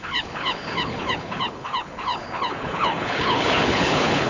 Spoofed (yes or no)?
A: yes